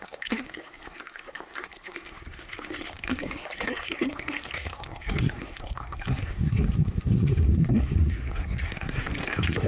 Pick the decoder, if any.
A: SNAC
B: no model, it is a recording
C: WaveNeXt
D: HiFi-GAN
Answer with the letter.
A